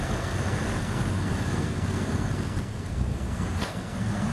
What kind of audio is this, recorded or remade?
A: remade